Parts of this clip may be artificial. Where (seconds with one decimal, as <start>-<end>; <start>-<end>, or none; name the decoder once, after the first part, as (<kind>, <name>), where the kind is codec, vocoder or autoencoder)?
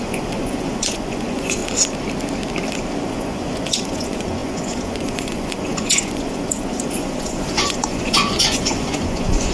0.0-1.6 (vocoder, Vocos); 3.1-9.5